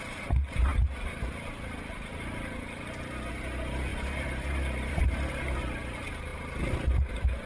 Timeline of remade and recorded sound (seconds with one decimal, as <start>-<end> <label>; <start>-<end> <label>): 0.0-7.5 recorded